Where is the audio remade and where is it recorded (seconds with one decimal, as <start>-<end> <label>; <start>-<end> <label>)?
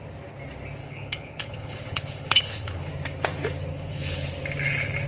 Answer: 0.0-0.8 recorded; 0.8-2.9 remade; 2.9-3.7 recorded; 3.7-4.3 remade; 4.3-5.1 recorded